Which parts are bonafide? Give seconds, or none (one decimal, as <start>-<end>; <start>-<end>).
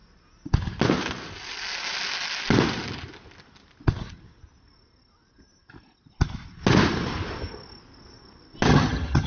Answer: 0.0-8.7